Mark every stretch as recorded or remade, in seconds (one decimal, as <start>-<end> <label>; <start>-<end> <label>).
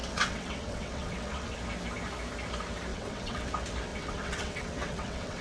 0.0-1.6 remade; 1.6-2.9 recorded; 2.9-3.5 remade; 3.5-3.9 recorded; 3.9-5.4 remade